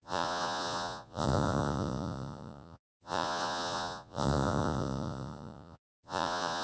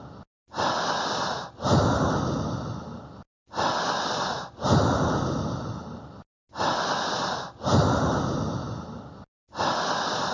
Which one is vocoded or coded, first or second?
first